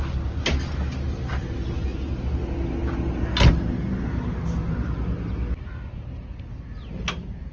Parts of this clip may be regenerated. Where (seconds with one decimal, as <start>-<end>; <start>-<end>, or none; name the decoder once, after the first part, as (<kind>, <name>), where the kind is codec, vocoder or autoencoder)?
none